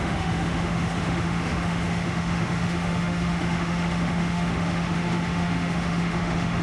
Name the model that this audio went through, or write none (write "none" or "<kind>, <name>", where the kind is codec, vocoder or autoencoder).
autoencoder, DAC-VAE